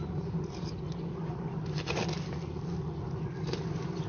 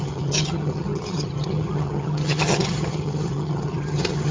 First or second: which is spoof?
second